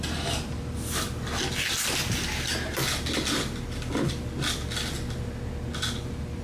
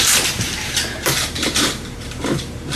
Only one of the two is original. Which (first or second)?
first